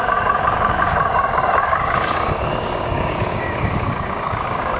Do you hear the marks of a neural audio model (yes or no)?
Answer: yes